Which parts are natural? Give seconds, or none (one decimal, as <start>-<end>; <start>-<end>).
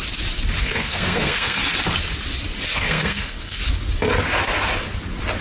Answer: 0.0-0.6; 1.6-2.7; 3.6-5.4